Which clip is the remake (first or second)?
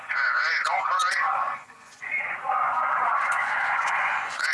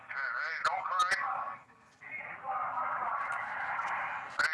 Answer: first